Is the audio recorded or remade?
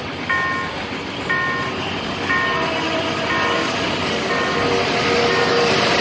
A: recorded